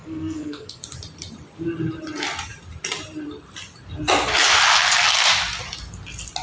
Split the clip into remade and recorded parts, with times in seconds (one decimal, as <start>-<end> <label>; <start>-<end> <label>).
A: 0.0-0.8 remade; 0.8-6.4 recorded